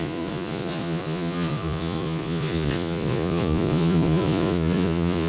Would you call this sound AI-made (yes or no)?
yes